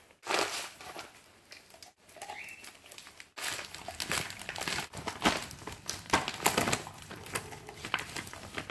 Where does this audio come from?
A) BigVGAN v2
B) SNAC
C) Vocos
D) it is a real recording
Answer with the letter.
D